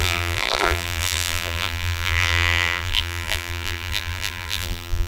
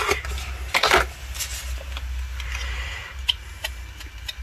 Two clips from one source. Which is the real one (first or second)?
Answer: second